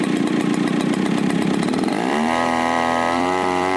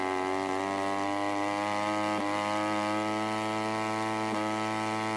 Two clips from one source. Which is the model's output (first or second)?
first